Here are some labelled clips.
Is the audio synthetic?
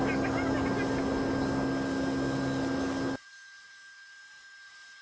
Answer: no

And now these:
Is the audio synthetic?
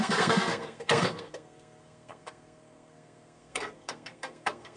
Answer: yes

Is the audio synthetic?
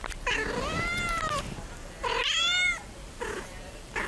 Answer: yes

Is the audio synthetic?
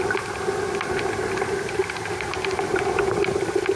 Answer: no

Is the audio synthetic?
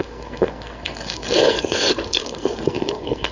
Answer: yes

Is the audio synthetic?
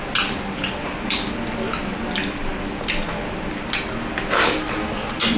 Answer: no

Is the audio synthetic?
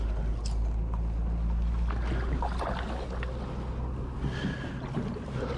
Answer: no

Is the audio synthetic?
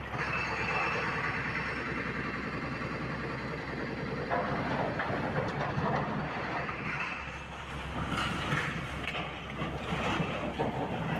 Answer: no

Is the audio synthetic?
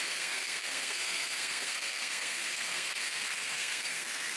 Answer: yes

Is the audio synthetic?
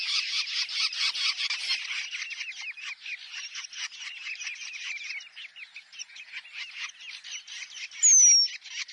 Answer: no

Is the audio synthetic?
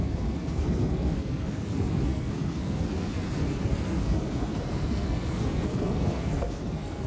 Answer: yes